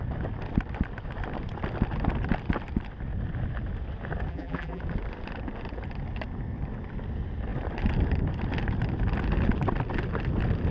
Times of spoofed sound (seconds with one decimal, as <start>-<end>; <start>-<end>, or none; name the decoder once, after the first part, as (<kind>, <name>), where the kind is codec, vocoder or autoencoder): 4.3-4.8 (vocoder, BigVGAN v2)